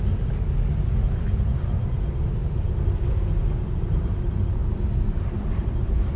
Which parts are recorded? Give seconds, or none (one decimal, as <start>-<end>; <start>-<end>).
0.0-6.2